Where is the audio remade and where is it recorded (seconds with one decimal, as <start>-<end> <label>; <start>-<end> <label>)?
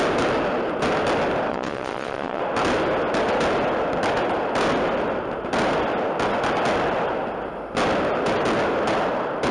0.0-1.5 recorded; 1.5-2.4 remade; 2.4-9.5 recorded